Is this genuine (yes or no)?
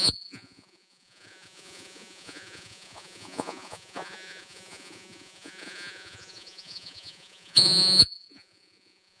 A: no